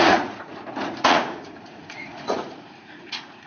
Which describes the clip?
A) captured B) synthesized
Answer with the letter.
B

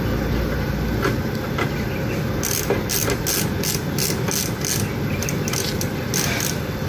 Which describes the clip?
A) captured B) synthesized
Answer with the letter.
A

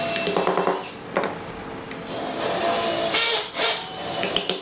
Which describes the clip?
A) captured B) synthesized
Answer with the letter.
A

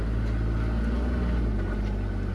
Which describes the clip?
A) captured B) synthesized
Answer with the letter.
A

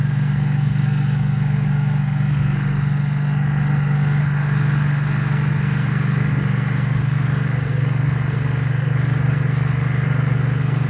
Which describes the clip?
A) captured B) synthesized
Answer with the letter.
B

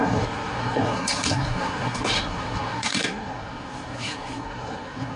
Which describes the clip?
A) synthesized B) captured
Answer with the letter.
A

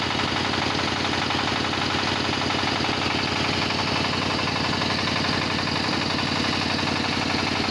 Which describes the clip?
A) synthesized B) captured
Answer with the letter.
B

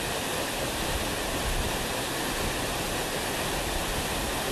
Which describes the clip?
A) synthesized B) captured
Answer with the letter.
B